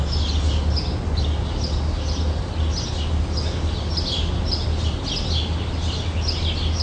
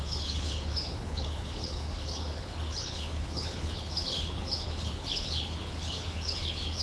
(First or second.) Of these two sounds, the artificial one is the second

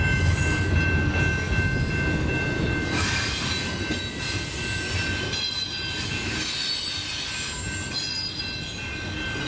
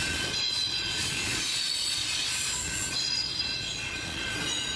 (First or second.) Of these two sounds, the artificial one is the second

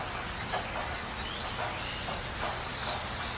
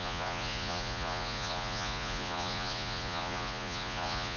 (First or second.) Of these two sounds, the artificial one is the second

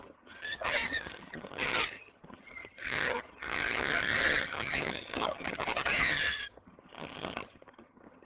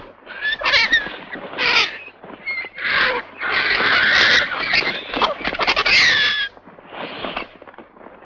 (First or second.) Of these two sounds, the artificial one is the first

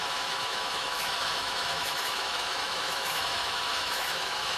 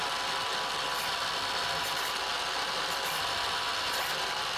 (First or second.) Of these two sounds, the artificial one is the first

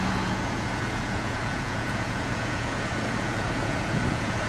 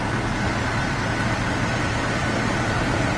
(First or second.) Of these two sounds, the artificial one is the first